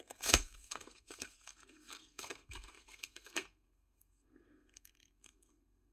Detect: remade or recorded remade